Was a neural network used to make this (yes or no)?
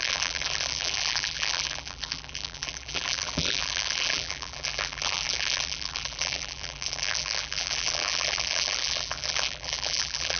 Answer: yes